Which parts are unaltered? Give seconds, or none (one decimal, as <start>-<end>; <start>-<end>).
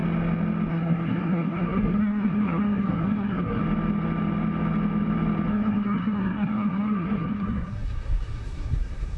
0.0-0.7; 3.6-5.5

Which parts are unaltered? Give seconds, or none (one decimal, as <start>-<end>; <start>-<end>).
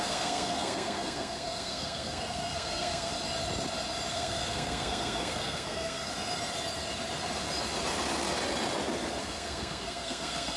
3.1-4.1; 6.1-9.2